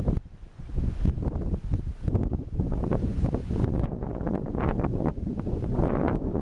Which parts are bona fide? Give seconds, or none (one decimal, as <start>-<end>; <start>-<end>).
0.0-0.4; 1.2-2.3